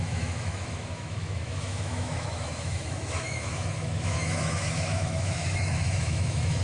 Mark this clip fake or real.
fake